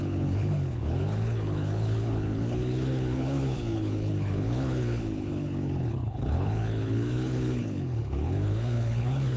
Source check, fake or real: fake